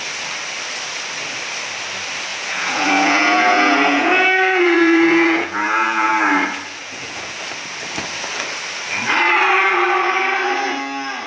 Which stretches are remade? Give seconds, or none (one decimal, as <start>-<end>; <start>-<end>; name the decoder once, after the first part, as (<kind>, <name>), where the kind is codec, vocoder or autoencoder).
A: 2.3-6.1 (vocoder, Vocos); 6.8-7.4